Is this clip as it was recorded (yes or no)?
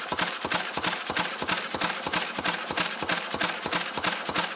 yes